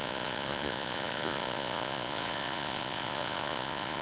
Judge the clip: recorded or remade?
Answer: remade